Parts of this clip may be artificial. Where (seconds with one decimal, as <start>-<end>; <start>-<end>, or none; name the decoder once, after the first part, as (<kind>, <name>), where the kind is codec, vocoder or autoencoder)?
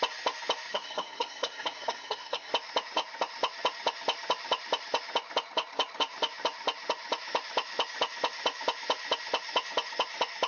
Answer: 0.7-2.5 (codec, SNAC)